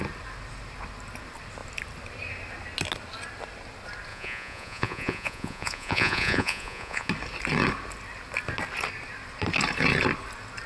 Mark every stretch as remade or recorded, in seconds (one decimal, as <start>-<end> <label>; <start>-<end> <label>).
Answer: 0.0-4.1 recorded; 4.1-7.1 remade; 7.1-10.7 recorded